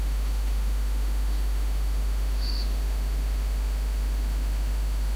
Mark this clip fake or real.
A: fake